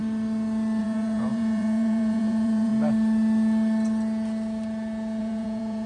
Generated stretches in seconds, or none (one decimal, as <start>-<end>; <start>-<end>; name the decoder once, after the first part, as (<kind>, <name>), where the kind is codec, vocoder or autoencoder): 0.8-2.7 (vocoder, Vocos); 5.2-5.9